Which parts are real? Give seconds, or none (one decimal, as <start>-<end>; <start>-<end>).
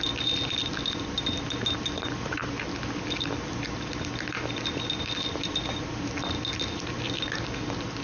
0.0-8.0